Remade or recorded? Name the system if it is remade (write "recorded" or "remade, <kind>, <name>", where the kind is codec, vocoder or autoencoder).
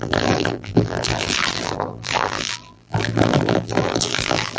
remade, vocoder, BigVGAN v2